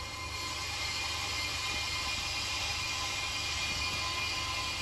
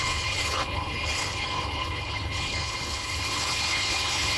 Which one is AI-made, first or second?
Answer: second